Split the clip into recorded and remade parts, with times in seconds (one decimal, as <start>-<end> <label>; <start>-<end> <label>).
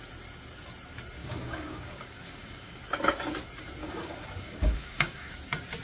0.0-1.2 recorded; 1.2-2.8 remade; 2.8-3.8 recorded; 3.8-5.3 remade; 5.3-5.8 recorded